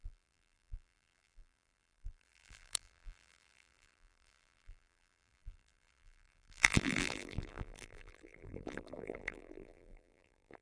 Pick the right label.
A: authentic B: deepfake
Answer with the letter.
B